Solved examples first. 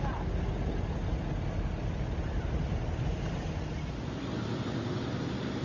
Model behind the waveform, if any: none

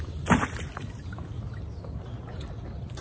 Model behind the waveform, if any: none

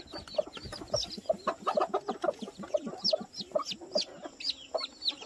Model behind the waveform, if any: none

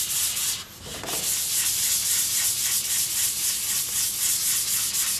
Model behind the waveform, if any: none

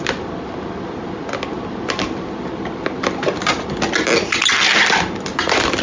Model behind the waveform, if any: vocoder, BigVGAN v2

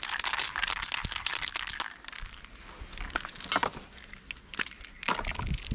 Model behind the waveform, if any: none